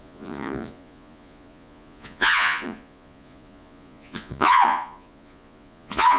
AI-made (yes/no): yes